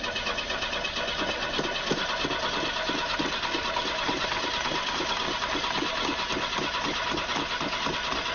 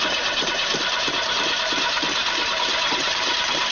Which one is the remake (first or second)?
second